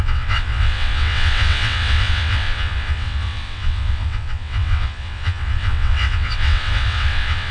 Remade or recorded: remade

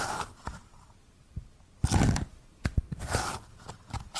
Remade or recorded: recorded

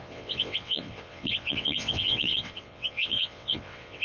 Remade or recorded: remade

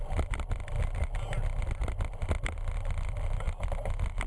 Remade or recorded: recorded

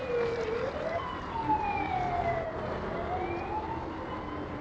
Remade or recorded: recorded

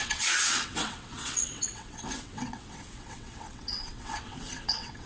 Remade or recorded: remade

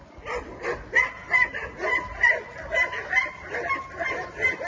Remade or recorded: recorded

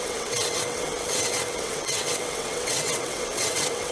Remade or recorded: remade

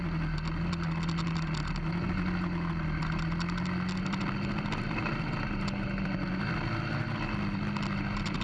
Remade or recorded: recorded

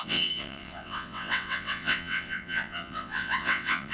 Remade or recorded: remade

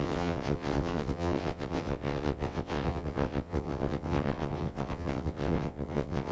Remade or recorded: remade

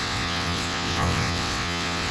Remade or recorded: remade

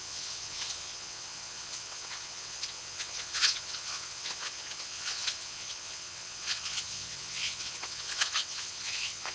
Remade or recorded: remade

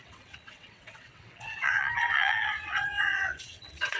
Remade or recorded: remade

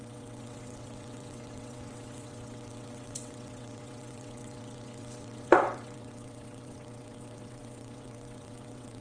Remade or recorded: remade